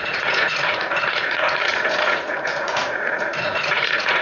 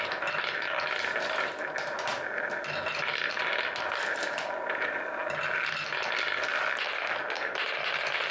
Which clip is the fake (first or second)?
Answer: first